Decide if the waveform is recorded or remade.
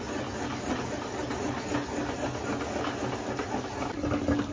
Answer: recorded